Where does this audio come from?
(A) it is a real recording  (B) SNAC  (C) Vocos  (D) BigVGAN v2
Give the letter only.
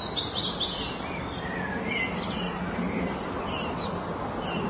A